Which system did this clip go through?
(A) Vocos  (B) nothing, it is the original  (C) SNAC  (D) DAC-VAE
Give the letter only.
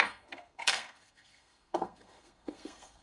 C